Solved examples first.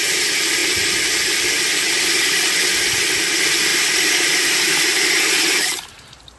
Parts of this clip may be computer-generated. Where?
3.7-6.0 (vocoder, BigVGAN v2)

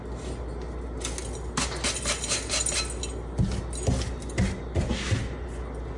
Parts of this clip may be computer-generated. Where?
4.8-5.5 (vocoder, BigVGAN v2)

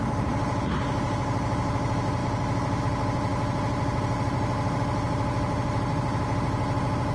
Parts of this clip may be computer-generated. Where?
none

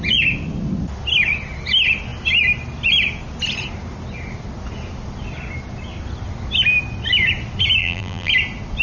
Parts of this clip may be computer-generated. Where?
7.8-8.3 (vocoder, BigVGAN v2)

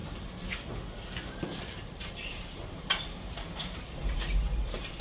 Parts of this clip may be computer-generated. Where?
1.4-5.0 (vocoder, BigVGAN v2)

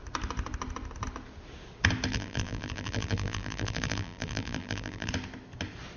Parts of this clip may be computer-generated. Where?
2.1-5.1 (vocoder, BigVGAN v2)